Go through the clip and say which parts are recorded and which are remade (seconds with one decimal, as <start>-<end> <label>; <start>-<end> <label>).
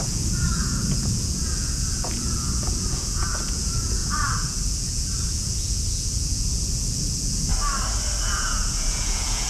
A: 0.0-7.5 remade; 7.5-8.2 recorded; 8.2-9.5 remade